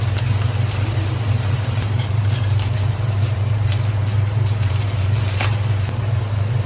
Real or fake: fake